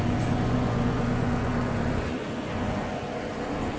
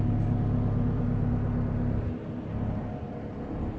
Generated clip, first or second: first